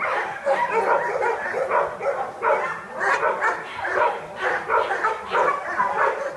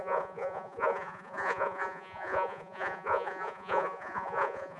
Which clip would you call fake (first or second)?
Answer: second